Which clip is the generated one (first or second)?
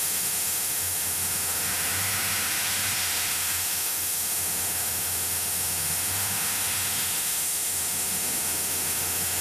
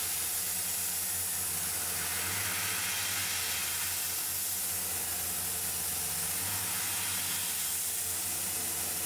first